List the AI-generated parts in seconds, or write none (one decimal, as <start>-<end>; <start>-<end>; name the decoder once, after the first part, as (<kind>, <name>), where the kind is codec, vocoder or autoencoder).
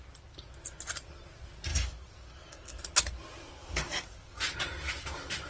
1.7-2.8 (codec, DAC); 3.6-4.4